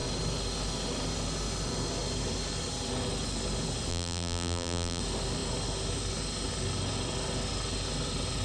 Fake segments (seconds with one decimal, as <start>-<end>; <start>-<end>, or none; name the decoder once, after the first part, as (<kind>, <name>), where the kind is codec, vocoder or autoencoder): 3.9-5.0 (vocoder, BigVGAN v2)